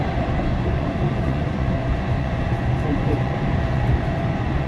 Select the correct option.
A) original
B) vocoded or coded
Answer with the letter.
B